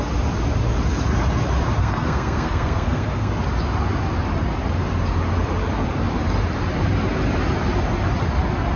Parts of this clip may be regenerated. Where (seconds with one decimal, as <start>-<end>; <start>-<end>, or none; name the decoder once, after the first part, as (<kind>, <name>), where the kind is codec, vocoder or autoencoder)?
1.8-3.3 (codec, SNAC)